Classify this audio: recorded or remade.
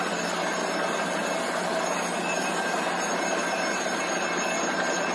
recorded